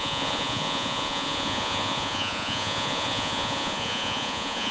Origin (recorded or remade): remade